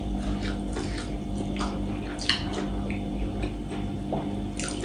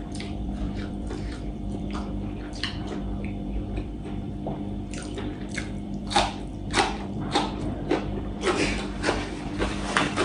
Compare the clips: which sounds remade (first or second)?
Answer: second